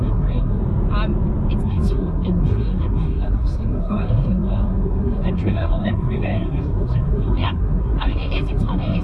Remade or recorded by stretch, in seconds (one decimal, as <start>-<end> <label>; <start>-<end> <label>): 0.0-0.6 remade; 0.6-1.6 recorded; 1.6-9.0 remade